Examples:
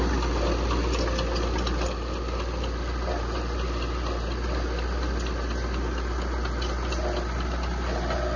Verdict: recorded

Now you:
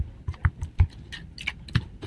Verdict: recorded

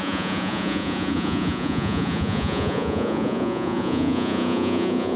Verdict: remade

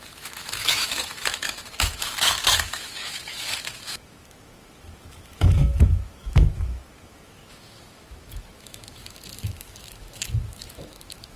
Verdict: remade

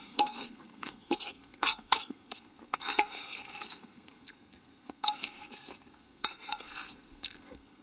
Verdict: remade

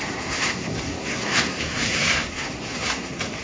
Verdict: remade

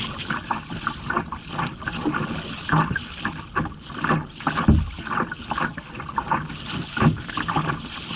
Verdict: recorded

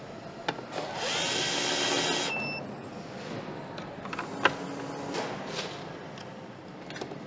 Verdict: recorded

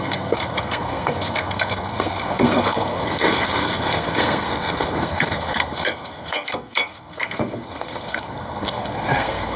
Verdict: remade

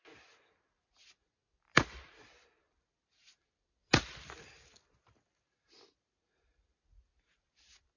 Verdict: recorded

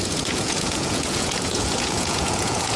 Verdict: remade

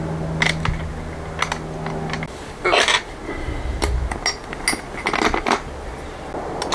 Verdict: recorded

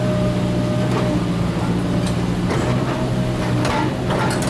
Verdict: recorded